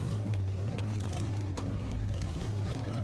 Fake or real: fake